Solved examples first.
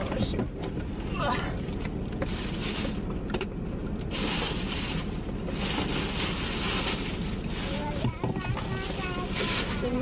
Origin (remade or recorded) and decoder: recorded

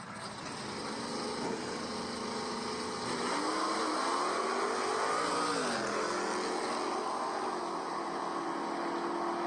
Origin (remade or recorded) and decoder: recorded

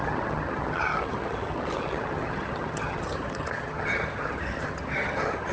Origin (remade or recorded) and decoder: remade, vocoder, HiFi-GAN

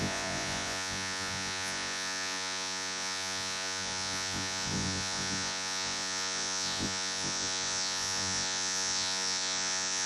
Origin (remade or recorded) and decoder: remade, vocoder, Vocos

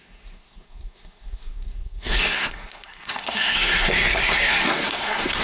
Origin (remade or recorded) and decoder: remade, codec, SNAC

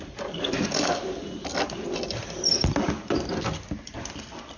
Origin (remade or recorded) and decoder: recorded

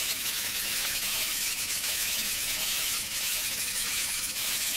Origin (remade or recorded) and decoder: remade, autoencoder, DAC-VAE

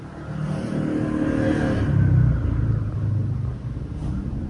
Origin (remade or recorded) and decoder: recorded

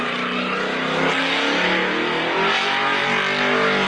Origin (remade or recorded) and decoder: recorded